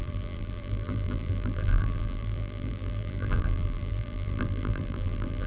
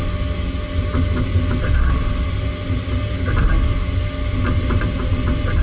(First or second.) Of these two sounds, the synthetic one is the first